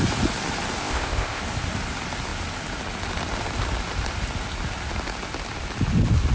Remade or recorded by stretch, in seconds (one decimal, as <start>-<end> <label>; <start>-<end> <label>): 0.0-0.8 recorded; 0.8-1.4 remade; 1.4-6.3 recorded